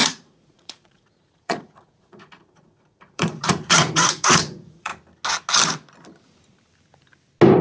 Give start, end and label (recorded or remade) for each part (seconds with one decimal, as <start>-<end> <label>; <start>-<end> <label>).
0.0-4.9 remade; 4.9-7.6 recorded